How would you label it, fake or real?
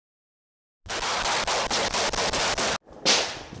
real